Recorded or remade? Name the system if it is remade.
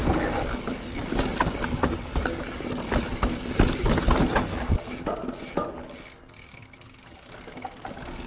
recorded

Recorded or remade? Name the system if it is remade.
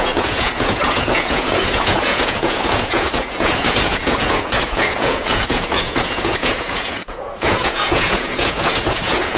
remade, vocoder, Vocos